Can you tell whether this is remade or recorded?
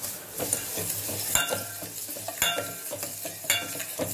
recorded